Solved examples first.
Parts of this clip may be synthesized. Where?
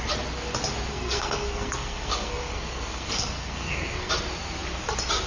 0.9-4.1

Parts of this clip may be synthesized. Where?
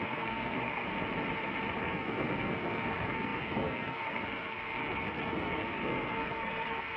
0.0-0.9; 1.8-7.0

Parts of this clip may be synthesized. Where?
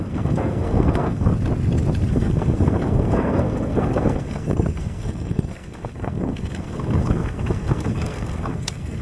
0.0-1.3; 2.1-9.0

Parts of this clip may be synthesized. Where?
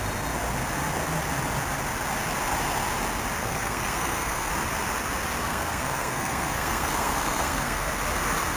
3.4-4.5; 5.4-7.9